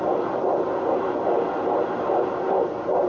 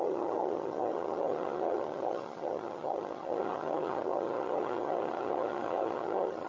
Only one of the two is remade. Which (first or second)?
second